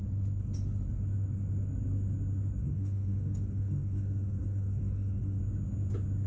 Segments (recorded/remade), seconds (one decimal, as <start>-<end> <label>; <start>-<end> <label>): 0.0-2.6 recorded; 2.6-5.4 remade; 5.4-6.3 recorded